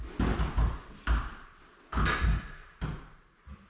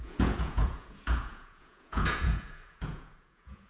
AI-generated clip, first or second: second